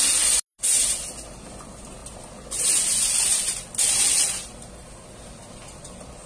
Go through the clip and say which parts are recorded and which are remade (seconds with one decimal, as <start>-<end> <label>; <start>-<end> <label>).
0.0-6.3 recorded